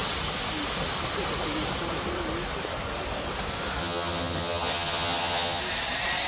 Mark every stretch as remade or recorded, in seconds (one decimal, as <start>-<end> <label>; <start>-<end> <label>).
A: 0.0-3.8 recorded; 3.8-5.6 remade; 5.6-6.3 recorded